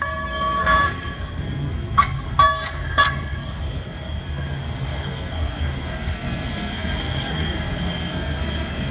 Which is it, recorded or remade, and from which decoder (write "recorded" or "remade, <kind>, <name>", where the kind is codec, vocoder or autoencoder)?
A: remade, codec, SNAC